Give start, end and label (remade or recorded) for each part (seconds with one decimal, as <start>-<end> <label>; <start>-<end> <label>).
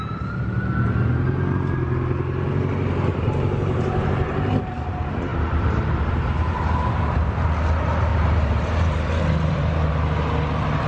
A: 0.0-3.1 recorded; 3.1-4.7 remade; 4.7-8.1 recorded; 8.1-9.9 remade; 9.9-10.9 recorded